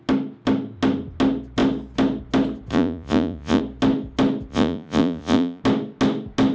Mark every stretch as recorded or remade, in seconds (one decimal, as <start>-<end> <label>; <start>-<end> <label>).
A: 0.0-2.7 recorded; 2.7-3.6 remade; 3.6-4.5 recorded; 4.5-5.6 remade; 5.6-6.5 recorded